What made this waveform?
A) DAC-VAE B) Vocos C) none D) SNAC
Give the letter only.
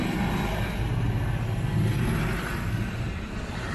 C